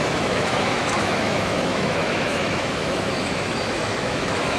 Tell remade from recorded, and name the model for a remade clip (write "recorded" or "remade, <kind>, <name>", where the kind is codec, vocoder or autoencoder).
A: remade, autoencoder, DAC-VAE